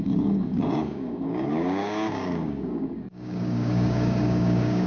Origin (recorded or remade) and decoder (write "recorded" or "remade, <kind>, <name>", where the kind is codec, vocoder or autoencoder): remade, codec, DAC